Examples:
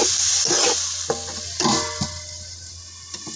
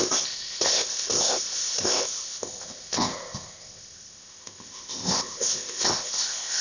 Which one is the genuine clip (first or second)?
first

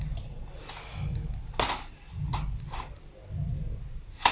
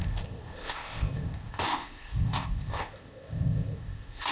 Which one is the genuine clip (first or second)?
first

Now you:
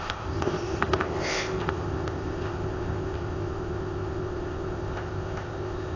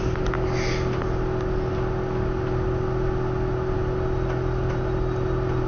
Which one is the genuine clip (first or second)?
second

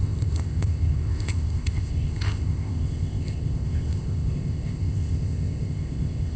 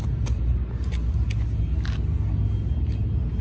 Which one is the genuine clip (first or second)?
second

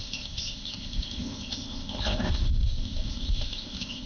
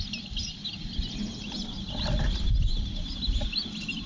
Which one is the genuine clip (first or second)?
second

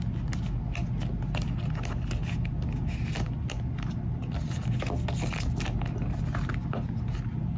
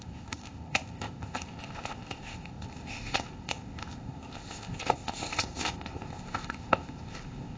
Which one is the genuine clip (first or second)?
first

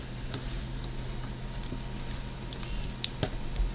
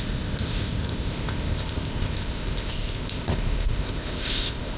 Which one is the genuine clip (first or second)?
first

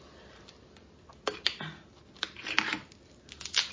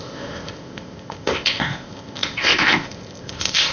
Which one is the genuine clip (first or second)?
first